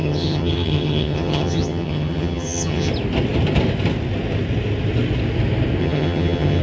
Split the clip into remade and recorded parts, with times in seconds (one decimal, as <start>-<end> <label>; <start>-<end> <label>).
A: 0.0-2.9 remade; 2.9-5.8 recorded; 5.8-6.6 remade